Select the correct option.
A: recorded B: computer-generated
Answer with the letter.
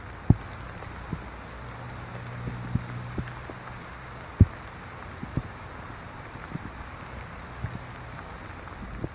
A